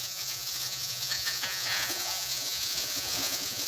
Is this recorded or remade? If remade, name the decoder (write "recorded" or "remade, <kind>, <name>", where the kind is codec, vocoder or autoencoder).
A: remade, vocoder, Vocos